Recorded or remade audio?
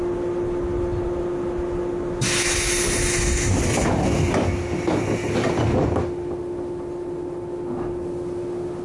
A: recorded